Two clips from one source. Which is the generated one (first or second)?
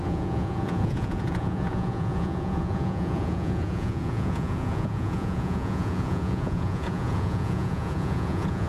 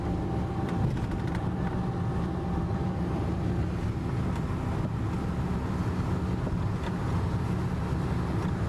first